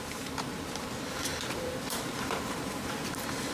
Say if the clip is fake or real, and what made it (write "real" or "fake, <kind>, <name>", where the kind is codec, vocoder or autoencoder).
fake, vocoder, BigVGAN v2